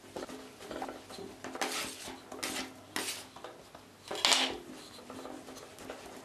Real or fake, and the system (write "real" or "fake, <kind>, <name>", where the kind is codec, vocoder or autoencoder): real